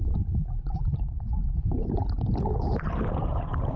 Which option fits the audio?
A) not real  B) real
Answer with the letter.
B